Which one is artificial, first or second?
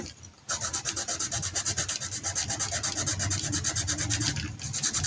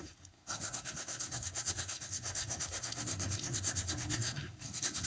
second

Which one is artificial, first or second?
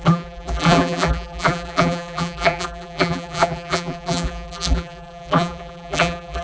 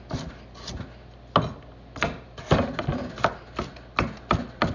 first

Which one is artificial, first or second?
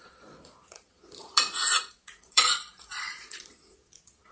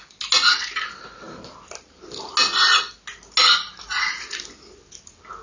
first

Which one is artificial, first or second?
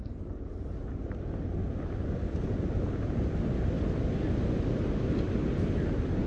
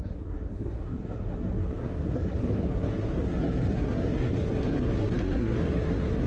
second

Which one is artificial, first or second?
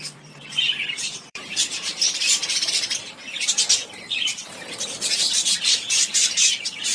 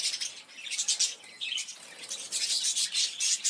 first